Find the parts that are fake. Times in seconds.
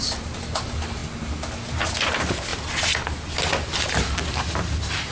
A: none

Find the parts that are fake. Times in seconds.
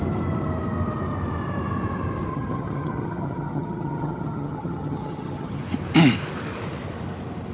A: 2.3-5.6